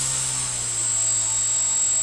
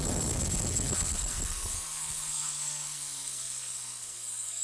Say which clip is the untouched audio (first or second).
first